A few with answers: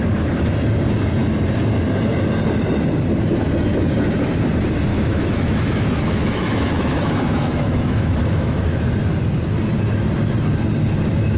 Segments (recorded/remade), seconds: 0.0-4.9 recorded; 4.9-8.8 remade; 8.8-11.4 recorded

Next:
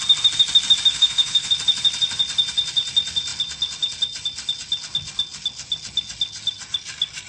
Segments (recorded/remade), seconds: 0.0-0.9 recorded; 0.9-1.5 remade; 1.5-7.3 recorded

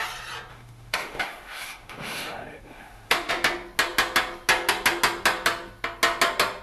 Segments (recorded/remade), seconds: 0.0-0.5 recorded; 0.5-3.3 remade; 3.3-6.6 recorded

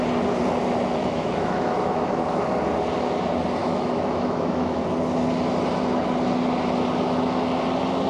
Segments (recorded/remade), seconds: 0.0-1.0 recorded; 1.0-2.4 remade; 2.4-3.6 recorded; 3.6-4.8 remade; 4.8-8.1 recorded

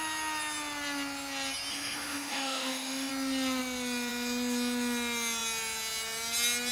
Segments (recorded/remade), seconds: 0.0-1.7 recorded; 1.7-3.1 remade; 3.1-6.7 recorded

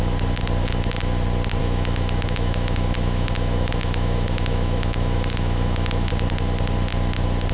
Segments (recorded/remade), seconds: 0.0-1.6 recorded; 1.6-6.1 remade; 6.1-7.5 recorded

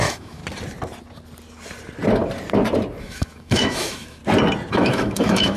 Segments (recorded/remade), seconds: 0.0-0.4 remade; 0.4-3.0 recorded; 3.0-4.2 remade; 4.2-4.7 recorded; 4.7-5.6 remade